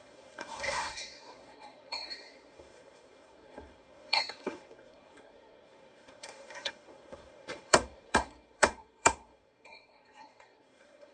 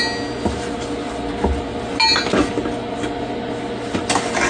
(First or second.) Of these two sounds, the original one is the second